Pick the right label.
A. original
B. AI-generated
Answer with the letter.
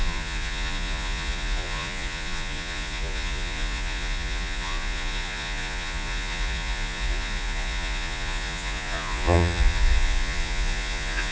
B